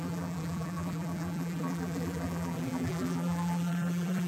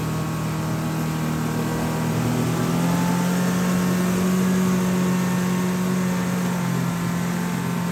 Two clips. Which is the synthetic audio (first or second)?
first